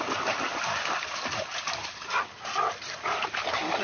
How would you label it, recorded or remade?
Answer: recorded